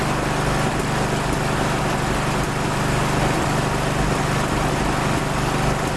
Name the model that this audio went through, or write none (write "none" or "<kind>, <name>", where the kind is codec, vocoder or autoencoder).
none